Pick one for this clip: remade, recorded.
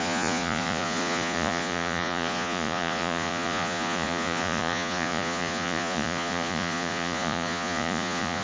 remade